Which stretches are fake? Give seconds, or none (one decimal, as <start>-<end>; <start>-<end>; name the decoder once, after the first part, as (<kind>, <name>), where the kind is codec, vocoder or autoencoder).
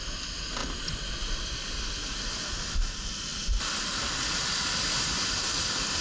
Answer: none